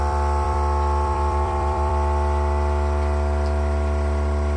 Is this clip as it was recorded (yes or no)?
no